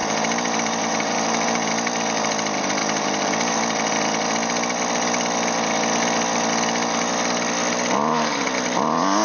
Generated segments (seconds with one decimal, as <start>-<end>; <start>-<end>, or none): 0.0-1.7; 2.8-3.6